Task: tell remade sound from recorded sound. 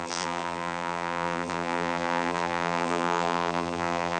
remade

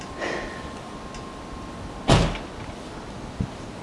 recorded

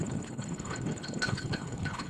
remade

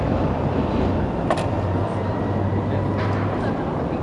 recorded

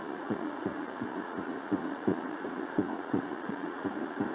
remade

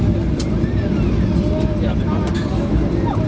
recorded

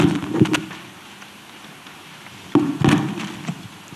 recorded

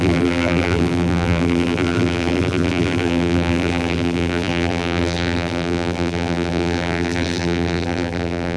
remade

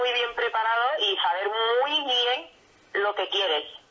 recorded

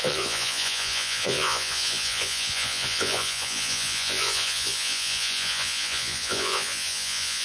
remade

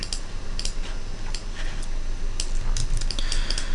recorded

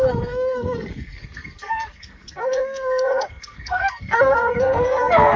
remade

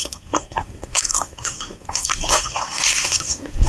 remade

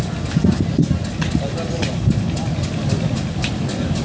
recorded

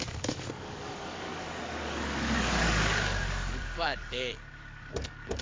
remade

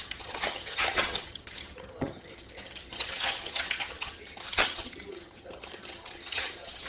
remade